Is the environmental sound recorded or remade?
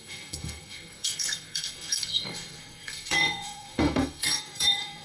remade